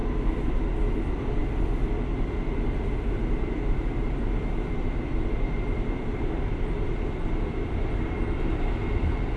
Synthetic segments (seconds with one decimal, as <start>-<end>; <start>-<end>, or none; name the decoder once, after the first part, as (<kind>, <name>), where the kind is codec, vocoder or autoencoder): 0.0-9.4 (vocoder, BigVGAN v2)